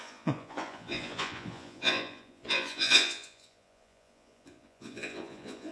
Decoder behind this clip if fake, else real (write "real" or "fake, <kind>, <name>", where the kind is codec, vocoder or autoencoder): fake, vocoder, Vocos